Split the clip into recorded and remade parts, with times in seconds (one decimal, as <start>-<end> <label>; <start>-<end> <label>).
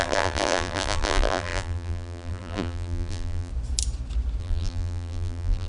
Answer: 0.0-3.5 remade; 3.5-4.4 recorded; 4.4-5.7 remade